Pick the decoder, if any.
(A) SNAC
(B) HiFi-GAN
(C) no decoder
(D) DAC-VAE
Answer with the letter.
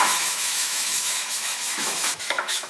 D